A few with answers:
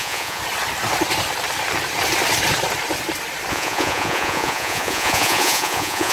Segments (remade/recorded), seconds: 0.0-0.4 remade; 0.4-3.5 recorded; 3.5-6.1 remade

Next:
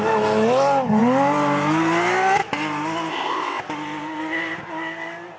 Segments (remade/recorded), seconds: 0.0-3.1 recorded; 3.1-3.6 remade; 3.6-5.4 recorded

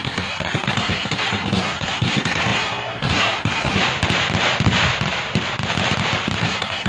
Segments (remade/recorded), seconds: 0.0-3.8 remade; 3.8-6.4 recorded; 6.4-6.9 remade

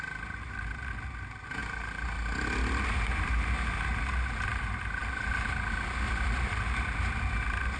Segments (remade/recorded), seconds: 0.0-7.8 recorded